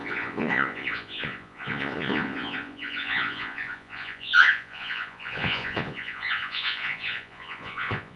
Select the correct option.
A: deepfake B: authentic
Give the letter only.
A